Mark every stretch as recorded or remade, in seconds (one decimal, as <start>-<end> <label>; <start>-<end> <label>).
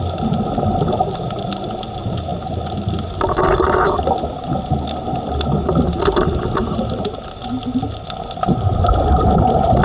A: 0.0-9.8 recorded